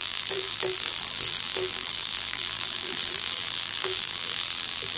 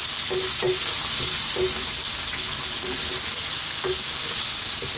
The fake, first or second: first